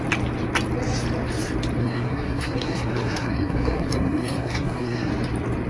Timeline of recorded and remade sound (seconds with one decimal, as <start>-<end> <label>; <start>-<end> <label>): 0.0-1.8 recorded; 1.8-5.1 remade; 5.1-5.7 recorded